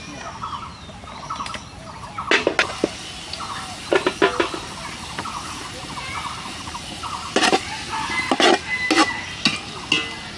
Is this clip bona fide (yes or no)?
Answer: yes